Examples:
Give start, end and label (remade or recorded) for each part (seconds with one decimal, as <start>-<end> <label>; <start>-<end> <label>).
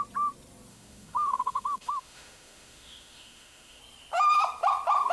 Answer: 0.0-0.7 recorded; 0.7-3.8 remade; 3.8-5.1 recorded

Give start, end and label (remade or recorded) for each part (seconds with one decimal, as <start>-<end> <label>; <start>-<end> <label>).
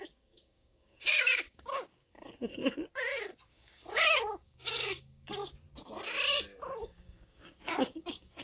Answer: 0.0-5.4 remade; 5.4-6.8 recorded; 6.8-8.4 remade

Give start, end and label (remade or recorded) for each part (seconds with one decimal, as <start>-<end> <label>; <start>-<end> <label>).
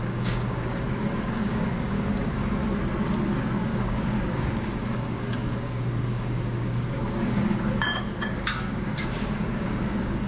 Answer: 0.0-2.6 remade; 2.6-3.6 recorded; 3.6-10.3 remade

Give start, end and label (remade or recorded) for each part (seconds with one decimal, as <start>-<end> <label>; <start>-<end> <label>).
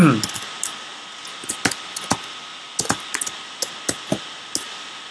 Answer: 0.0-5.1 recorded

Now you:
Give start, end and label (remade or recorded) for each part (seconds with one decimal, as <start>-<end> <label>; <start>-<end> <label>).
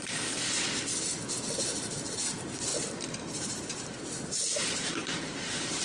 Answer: 0.0-2.7 recorded; 2.7-5.8 remade